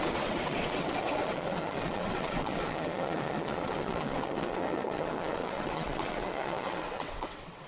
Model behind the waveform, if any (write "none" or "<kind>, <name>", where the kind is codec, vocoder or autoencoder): vocoder, WaveNeXt